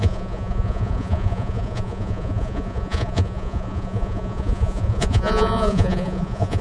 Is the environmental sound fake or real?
fake